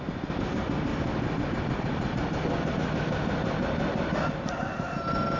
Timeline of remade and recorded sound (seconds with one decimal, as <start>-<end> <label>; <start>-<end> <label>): 0.0-5.4 recorded